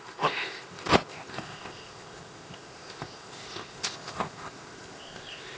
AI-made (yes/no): yes